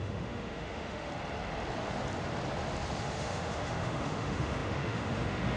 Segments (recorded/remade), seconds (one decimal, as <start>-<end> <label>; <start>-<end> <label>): 0.0-1.1 remade; 1.1-3.0 recorded; 3.0-5.6 remade

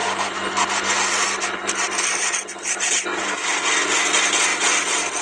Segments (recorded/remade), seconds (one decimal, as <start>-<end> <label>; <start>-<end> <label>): 0.0-5.2 recorded

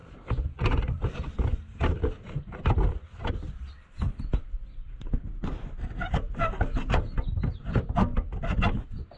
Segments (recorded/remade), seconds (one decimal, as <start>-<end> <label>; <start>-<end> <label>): 0.0-9.2 recorded

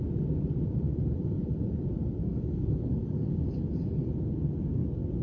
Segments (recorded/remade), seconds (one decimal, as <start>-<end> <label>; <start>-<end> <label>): 0.0-2.2 recorded; 2.2-3.5 remade; 3.5-5.2 recorded

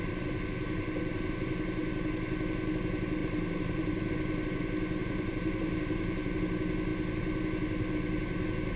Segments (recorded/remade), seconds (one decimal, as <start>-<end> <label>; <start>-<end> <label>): 0.0-3.2 recorded; 3.2-4.1 remade; 4.1-5.0 recorded; 5.0-6.4 remade; 6.4-8.8 recorded

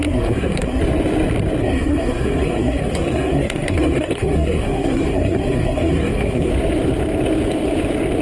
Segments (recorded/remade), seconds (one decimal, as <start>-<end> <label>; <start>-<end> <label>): 0.0-0.8 remade; 0.8-1.6 recorded; 1.6-6.5 remade; 6.5-8.2 recorded